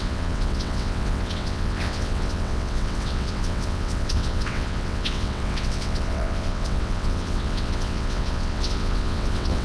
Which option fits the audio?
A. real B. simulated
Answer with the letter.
B